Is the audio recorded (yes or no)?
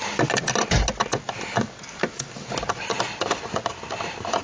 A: yes